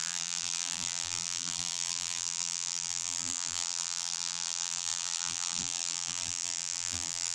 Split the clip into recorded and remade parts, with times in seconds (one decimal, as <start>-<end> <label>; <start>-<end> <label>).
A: 0.0-7.3 remade